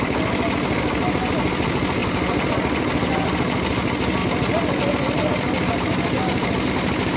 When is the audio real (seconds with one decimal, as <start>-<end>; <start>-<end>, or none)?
0.0-7.2